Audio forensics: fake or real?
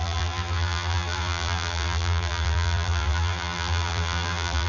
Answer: fake